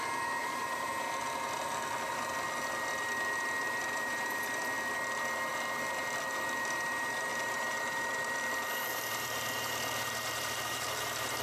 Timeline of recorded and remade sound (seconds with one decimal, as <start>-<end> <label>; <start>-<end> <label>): 0.0-0.4 recorded; 0.4-0.9 remade; 0.9-3.8 recorded; 3.8-4.4 remade; 4.4-7.3 recorded; 7.3-11.4 remade